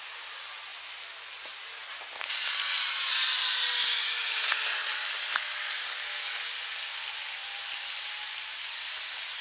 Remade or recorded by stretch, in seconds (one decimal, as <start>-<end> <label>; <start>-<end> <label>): 0.0-9.4 recorded